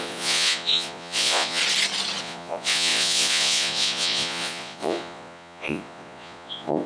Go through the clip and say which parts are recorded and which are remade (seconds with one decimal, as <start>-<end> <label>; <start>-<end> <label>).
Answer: 0.0-1.6 remade; 1.6-2.2 recorded; 2.2-6.9 remade